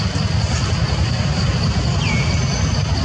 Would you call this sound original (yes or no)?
yes